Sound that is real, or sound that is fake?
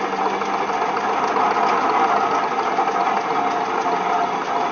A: real